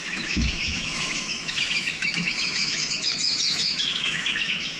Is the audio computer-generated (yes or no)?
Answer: yes